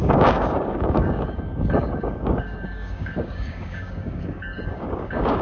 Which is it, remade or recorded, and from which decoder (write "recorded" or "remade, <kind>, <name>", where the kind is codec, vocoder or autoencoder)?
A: remade, codec, DAC